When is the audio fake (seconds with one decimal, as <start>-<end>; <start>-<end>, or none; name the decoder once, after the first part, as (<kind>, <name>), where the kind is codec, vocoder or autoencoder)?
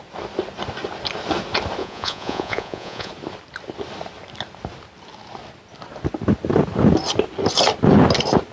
1.8-3.1 (vocoder, Vocos)